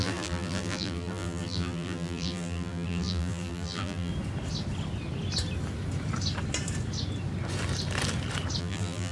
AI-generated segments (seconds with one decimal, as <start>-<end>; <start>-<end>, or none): 0.0-4.1; 8.6-9.1